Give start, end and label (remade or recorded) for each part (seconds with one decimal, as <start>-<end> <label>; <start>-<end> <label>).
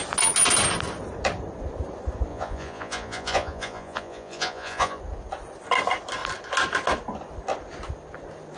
0.0-2.3 recorded; 2.3-5.0 remade; 5.0-8.6 recorded